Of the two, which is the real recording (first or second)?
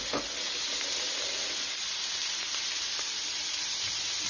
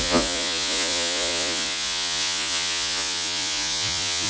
first